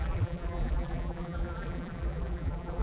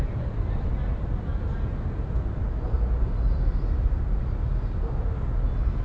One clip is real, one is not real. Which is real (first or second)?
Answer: second